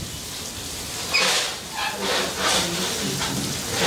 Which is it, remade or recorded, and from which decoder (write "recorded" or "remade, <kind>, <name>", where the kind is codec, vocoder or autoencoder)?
recorded